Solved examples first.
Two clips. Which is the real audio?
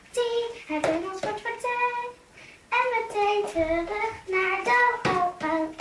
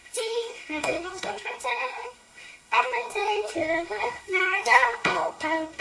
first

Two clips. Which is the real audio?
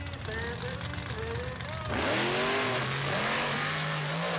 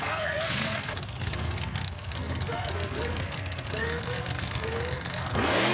first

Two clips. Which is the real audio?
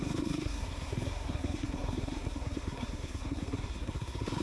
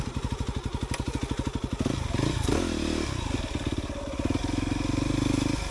second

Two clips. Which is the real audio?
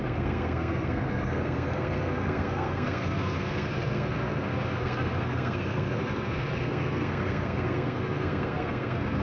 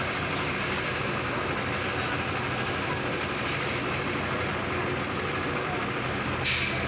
second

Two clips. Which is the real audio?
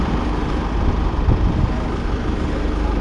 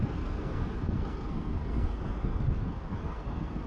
first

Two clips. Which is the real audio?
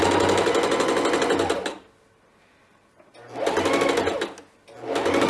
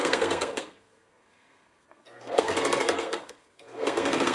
first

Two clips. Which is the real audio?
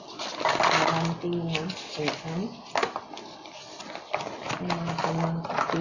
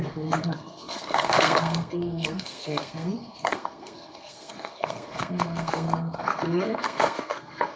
first